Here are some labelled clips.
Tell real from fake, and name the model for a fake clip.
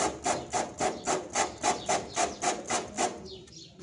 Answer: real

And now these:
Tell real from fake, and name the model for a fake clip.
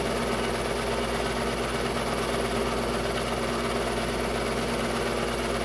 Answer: real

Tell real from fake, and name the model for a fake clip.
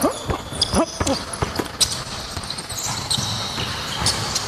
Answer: real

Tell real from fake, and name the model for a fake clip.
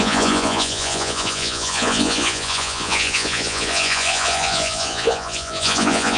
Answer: fake, vocoder, Vocos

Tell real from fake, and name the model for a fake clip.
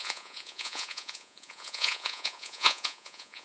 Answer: fake, vocoder, Vocos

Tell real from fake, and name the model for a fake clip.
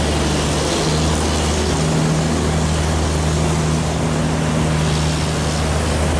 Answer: real